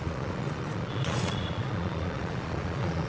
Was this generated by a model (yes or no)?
yes